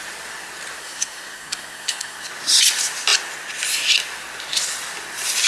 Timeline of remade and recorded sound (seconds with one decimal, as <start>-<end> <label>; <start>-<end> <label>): 0.0-0.8 recorded; 0.8-2.3 remade; 2.3-5.5 recorded